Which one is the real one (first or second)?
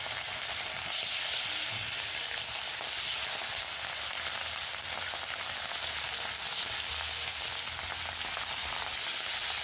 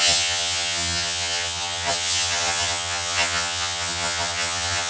first